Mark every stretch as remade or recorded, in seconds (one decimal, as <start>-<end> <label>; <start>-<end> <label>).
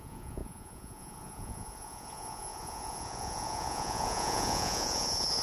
0.0-5.4 remade